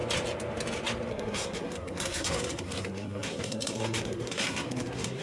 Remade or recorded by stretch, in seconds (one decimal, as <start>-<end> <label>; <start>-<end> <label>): 0.0-1.1 recorded; 1.1-5.2 remade